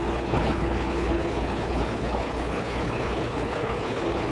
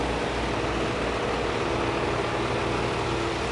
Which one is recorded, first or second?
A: second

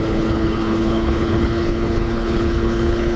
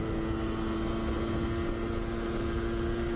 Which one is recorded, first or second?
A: second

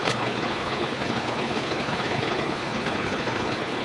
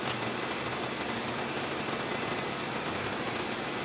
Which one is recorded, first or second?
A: second